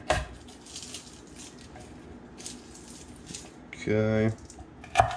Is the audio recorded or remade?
recorded